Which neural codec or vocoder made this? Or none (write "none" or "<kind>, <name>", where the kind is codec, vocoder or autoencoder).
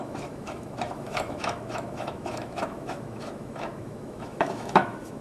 autoencoder, DAC-VAE